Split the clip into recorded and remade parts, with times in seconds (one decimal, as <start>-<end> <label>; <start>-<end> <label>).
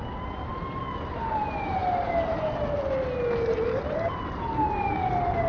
0.0-5.5 recorded